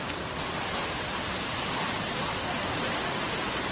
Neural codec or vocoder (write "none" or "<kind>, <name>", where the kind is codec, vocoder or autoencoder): none